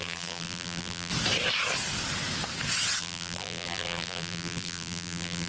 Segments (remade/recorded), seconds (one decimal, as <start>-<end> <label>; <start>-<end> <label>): 0.0-1.1 remade; 1.1-3.0 recorded; 3.0-5.5 remade